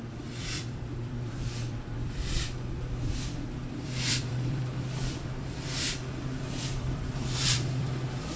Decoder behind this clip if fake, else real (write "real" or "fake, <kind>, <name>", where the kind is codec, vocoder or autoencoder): fake, vocoder, BigVGAN v2